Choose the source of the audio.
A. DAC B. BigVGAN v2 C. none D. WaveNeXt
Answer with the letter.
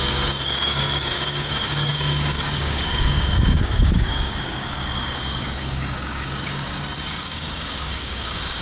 A